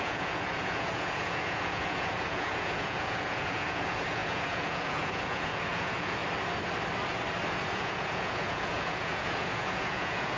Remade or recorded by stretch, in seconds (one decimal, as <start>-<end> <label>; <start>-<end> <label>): 0.0-6.2 remade; 6.2-7.5 recorded; 7.5-10.4 remade